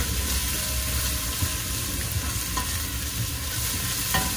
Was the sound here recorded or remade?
recorded